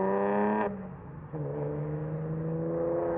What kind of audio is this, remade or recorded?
recorded